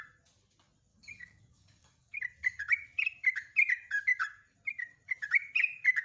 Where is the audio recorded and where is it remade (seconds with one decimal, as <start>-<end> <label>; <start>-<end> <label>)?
0.0-0.9 recorded; 0.9-2.2 remade; 2.2-6.0 recorded